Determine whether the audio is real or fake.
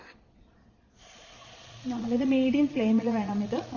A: fake